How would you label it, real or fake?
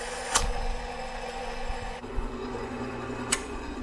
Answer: fake